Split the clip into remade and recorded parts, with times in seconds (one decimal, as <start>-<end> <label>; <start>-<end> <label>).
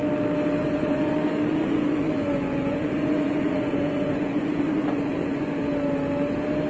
0.0-0.6 recorded; 0.6-1.1 remade; 1.1-1.5 recorded; 1.5-5.5 remade; 5.5-6.7 recorded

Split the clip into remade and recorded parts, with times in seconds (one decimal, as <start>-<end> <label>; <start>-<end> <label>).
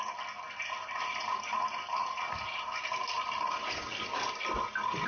0.0-0.8 recorded; 0.8-3.8 remade; 3.8-5.1 recorded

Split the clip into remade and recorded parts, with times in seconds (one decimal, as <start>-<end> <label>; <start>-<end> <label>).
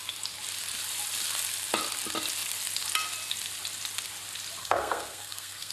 0.0-4.6 recorded; 4.6-5.7 remade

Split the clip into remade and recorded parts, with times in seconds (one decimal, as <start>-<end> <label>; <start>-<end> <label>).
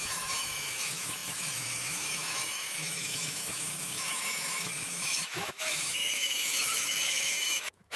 0.0-8.0 remade